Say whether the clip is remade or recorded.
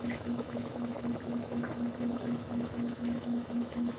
remade